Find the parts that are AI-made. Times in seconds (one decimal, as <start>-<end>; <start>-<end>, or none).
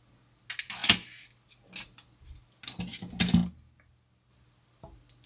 none